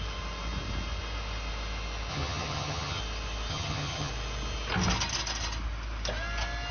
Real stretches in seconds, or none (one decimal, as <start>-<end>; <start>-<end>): 0.0-2.1; 3.0-3.5; 4.1-6.7

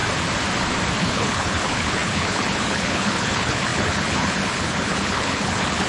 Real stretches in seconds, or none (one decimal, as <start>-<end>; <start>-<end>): 0.0-1.0

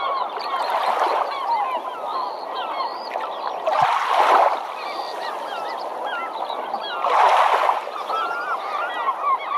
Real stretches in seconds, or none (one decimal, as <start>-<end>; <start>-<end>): 0.0-9.6

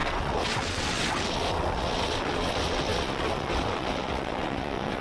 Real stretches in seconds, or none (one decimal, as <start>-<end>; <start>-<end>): none

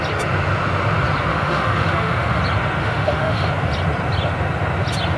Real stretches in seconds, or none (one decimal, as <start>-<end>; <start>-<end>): 0.0-1.3; 2.4-2.8; 3.5-5.2

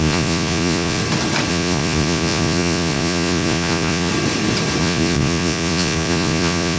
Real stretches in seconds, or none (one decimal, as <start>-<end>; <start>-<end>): 1.0-1.5; 4.1-4.8

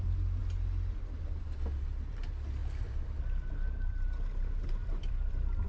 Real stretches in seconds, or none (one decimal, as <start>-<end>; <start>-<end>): 0.0-4.8